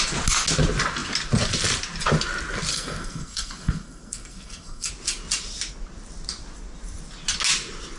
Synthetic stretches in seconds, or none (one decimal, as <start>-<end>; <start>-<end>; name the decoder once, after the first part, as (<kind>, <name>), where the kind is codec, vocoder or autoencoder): 2.7-4.9 (codec, SNAC)